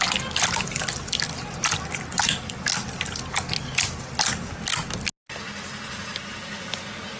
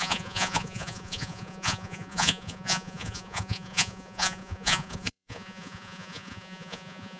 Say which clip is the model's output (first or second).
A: second